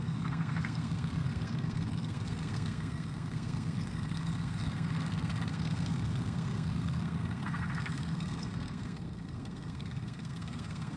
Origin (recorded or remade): remade